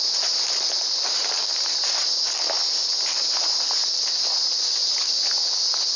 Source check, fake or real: real